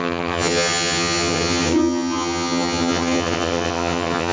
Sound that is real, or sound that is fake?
fake